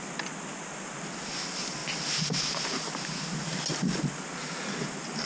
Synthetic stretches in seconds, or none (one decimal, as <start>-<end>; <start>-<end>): none